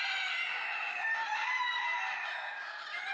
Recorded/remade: recorded